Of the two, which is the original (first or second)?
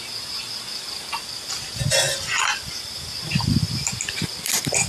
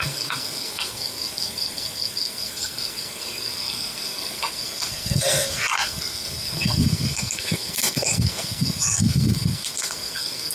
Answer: first